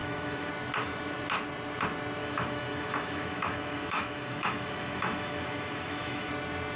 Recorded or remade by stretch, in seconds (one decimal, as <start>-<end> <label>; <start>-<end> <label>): 0.0-0.5 remade; 0.5-2.2 recorded; 2.2-6.3 remade; 6.3-6.8 recorded